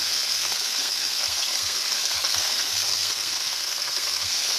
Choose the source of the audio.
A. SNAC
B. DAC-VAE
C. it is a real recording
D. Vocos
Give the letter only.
A